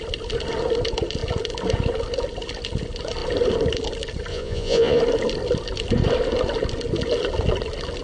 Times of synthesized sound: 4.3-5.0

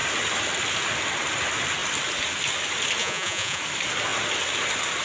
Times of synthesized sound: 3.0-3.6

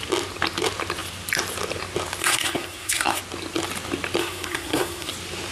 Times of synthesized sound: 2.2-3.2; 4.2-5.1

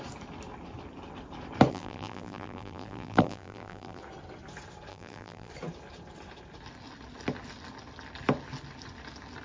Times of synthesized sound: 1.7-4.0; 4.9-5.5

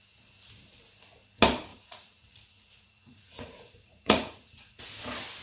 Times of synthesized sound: 1.7-4.9

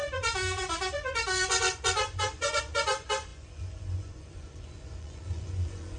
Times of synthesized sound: 0.0-6.0